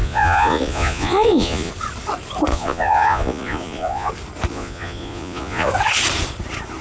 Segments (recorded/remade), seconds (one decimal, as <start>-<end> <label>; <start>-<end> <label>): 0.0-1.7 remade; 1.7-2.5 recorded; 2.5-4.1 remade; 4.1-4.5 recorded; 4.5-5.7 remade; 5.7-6.8 recorded